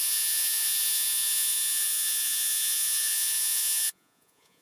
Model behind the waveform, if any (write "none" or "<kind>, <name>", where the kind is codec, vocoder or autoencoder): vocoder, Vocos